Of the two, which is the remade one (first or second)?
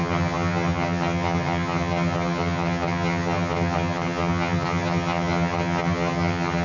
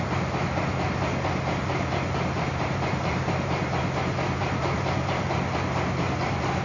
first